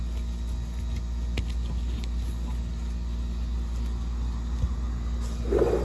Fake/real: real